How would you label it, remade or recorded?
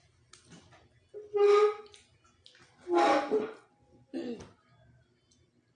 recorded